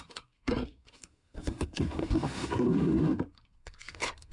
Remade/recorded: remade